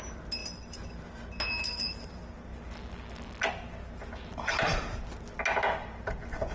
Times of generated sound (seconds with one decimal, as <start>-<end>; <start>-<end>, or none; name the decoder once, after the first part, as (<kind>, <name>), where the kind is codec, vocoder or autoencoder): none